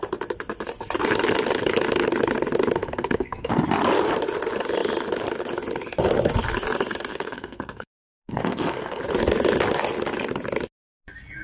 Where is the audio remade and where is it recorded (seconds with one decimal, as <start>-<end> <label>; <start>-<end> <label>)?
0.0-2.8 recorded; 2.8-3.6 remade; 3.6-7.1 recorded; 7.1-9.0 remade; 9.0-11.4 recorded